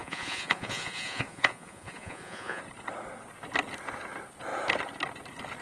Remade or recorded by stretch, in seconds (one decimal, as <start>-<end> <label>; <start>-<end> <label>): 0.0-2.6 remade; 2.6-5.6 recorded